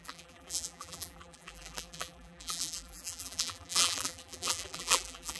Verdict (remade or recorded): remade